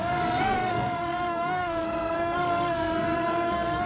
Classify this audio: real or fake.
fake